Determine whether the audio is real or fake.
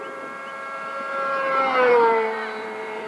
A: fake